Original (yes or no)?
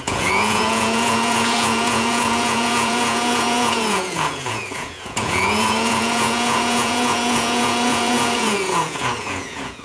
no